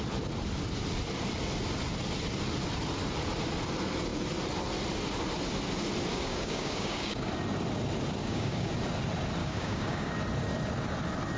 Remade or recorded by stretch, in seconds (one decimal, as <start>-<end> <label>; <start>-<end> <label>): 0.0-6.1 recorded; 6.1-7.3 remade; 7.3-8.2 recorded; 8.2-8.7 remade; 8.7-9.4 recorded; 9.4-10.1 remade; 10.1-11.4 recorded